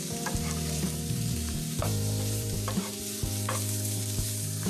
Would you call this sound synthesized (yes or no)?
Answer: yes